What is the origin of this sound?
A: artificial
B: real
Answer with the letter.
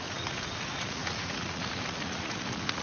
A